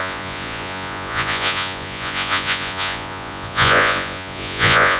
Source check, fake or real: fake